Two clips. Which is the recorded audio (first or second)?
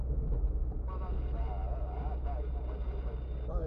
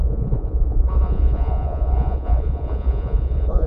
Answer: first